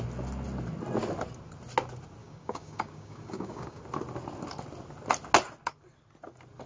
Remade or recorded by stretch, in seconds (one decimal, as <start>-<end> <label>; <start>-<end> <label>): 0.0-2.2 recorded; 2.2-3.8 remade; 3.8-6.7 recorded